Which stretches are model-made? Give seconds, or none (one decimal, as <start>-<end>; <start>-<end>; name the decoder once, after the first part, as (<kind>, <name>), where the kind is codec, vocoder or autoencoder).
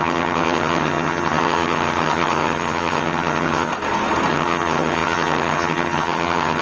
0.0-3.7 (vocoder, HiFi-GAN); 4.3-6.6